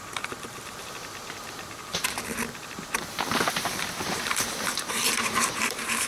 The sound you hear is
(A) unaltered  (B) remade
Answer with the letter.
B